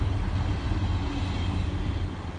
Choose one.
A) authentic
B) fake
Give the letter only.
A